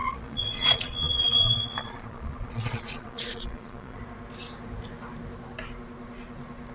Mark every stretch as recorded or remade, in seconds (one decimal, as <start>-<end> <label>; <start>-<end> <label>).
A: 0.0-4.0 remade; 4.0-6.7 recorded